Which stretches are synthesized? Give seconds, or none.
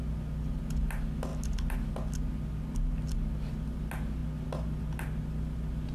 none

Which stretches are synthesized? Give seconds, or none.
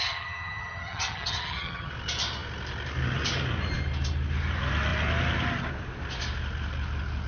0.0-1.9 (vocoder, HiFi-GAN)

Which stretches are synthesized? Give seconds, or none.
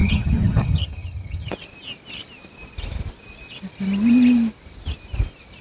0.0-1.5 (vocoder, HiFi-GAN)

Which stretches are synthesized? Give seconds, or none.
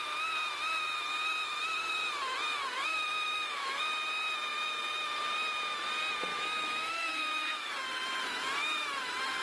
2.9-3.8 (autoencoder, DAC-VAE); 6.3-7.7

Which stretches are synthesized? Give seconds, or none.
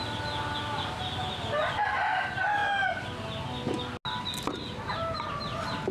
none